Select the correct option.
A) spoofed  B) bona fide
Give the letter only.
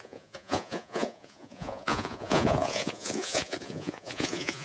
A